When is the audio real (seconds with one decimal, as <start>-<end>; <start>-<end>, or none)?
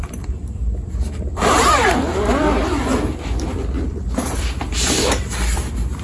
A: 2.1-3.1